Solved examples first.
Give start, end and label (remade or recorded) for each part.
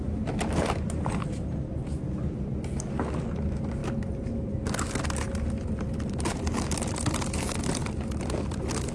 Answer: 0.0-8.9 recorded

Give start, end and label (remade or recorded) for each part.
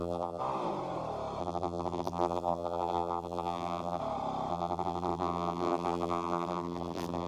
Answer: 0.0-0.4 remade; 0.4-1.4 recorded; 1.4-4.0 remade; 4.0-4.5 recorded; 4.5-7.3 remade